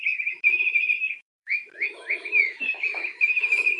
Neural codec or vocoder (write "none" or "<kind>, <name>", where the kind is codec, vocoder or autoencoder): autoencoder, DAC-VAE